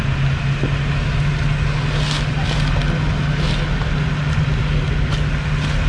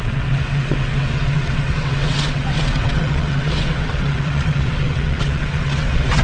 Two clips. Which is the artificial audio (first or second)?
second